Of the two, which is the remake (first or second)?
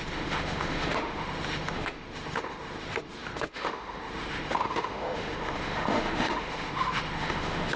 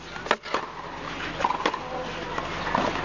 first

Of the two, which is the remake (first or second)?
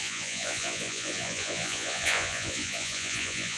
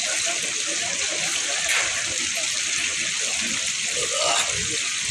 first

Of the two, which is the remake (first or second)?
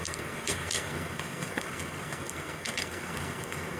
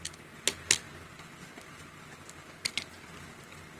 first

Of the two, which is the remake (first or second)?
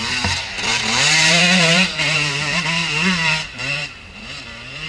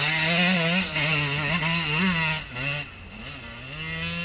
first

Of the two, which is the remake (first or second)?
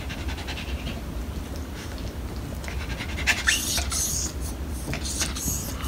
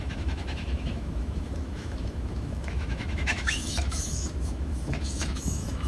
second